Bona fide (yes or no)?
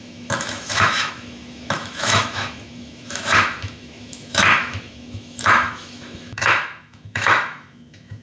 no